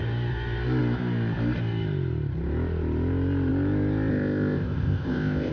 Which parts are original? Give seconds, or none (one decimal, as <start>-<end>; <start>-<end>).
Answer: 0.0-4.1